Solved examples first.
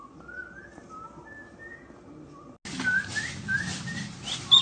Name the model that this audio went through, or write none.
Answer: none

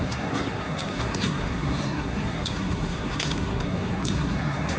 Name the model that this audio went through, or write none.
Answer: codec, SNAC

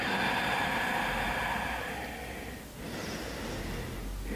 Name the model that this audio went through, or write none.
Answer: none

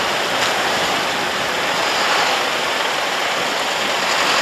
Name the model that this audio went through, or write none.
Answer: none